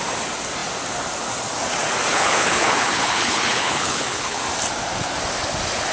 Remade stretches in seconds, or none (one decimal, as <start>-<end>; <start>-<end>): 2.1-4.4